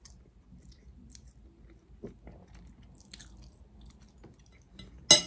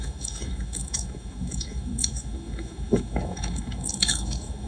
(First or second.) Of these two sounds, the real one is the first